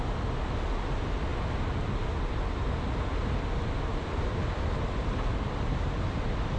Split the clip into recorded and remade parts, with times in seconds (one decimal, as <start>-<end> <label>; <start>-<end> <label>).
0.0-3.9 recorded; 3.9-6.6 remade